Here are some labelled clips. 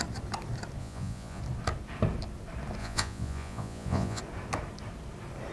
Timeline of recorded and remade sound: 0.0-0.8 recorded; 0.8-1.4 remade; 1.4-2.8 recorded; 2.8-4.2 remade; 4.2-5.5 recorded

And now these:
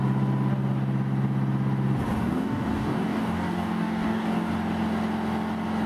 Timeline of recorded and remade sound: 0.0-2.2 recorded; 2.2-4.5 remade; 4.5-5.9 recorded

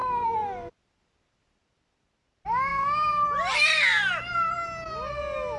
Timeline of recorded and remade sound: 0.0-5.6 recorded